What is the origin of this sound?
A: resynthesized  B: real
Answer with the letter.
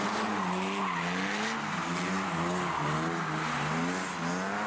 B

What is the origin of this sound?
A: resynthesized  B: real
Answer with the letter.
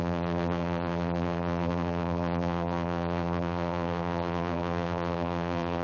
A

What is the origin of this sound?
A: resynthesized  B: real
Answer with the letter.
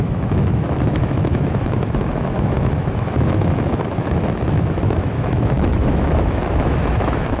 A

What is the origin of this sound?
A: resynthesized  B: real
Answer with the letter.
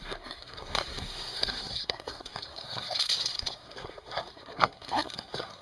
A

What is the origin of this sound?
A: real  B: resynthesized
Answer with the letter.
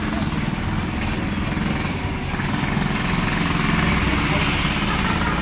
A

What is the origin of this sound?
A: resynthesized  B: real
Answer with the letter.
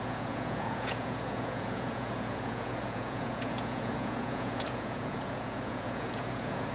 A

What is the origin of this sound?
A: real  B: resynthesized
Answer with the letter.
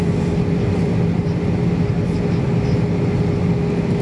A